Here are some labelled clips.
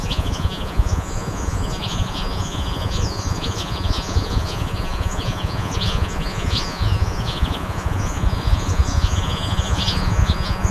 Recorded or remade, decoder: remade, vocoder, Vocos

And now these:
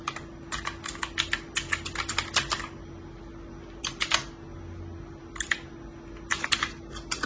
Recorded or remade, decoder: recorded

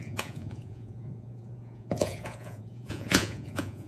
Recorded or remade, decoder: remade, vocoder, Vocos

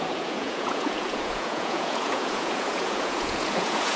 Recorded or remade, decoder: remade, vocoder, Vocos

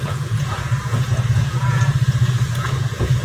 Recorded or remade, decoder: remade, vocoder, Vocos